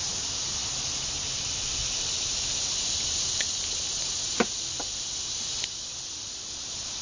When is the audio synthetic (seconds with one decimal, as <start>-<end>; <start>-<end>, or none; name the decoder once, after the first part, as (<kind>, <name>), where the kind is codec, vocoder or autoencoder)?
none